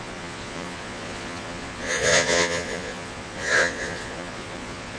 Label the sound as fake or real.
fake